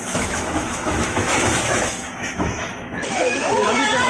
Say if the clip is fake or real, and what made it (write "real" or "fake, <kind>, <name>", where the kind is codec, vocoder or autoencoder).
fake, autoencoder, DAC-VAE